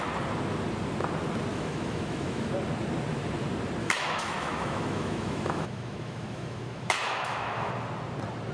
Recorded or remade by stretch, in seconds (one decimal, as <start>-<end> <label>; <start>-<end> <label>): 0.0-1.5 recorded; 1.5-2.5 remade; 2.5-3.8 recorded; 3.8-7.7 remade; 7.7-8.5 recorded